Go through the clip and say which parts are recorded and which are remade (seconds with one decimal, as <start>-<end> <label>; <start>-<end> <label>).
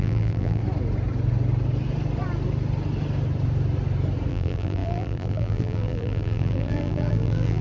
0.0-0.6 remade; 0.6-4.3 recorded; 4.3-7.6 remade